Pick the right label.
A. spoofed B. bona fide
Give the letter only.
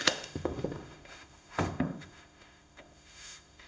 A